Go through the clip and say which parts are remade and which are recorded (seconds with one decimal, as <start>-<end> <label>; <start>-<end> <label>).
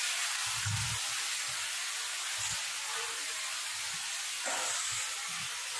0.0-5.8 recorded